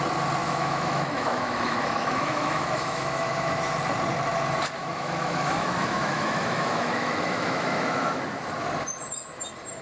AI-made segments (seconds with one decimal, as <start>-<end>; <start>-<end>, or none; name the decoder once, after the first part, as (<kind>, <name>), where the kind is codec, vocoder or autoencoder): 0.4-3.7 (autoencoder, DAC-VAE); 4.8-8.2